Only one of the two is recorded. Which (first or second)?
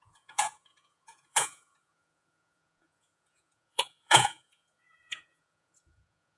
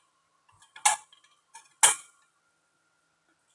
second